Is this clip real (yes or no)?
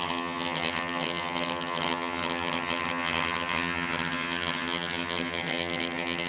no